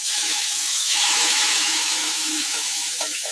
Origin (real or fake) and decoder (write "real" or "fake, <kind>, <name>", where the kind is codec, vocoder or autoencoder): fake, autoencoder, DAC-VAE